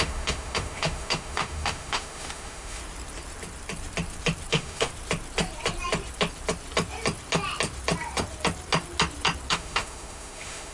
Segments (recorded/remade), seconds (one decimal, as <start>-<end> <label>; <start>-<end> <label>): 0.0-2.8 remade; 2.8-4.5 recorded; 4.5-4.9 remade; 4.9-9.5 recorded; 9.5-10.7 remade